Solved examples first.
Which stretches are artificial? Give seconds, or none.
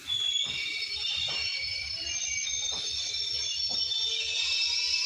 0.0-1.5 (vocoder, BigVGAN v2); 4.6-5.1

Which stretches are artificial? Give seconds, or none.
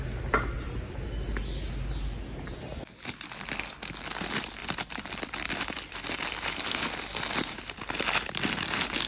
0.6-1.1 (vocoder, BigVGAN v2); 4.6-7.6